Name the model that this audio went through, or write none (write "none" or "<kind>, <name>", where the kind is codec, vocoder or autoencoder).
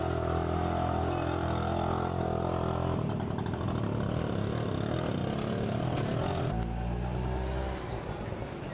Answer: none